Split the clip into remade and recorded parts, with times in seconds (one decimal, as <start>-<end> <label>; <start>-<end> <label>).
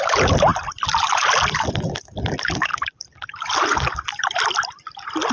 0.0-5.3 recorded